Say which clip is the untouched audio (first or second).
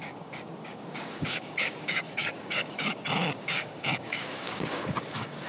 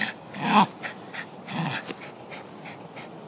second